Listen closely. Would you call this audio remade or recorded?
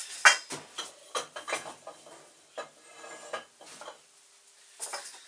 recorded